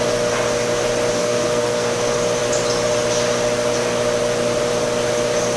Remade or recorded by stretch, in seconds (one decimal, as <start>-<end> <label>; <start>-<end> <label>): 0.0-1.2 recorded; 1.2-1.9 remade; 1.9-5.6 recorded